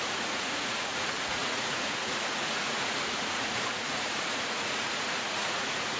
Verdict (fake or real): fake